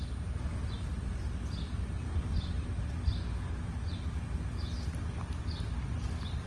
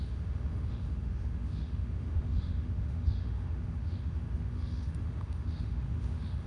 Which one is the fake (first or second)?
second